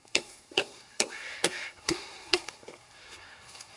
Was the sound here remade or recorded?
remade